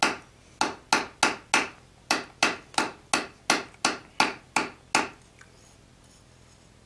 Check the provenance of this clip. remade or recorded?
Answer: recorded